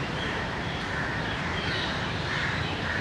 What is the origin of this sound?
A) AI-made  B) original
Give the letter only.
A